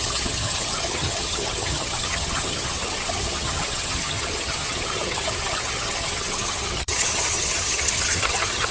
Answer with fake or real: fake